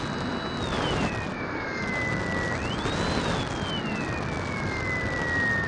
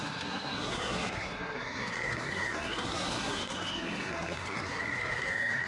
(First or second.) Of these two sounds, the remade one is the second